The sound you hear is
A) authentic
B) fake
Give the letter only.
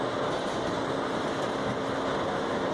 A